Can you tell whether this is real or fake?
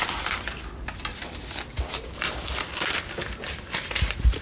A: real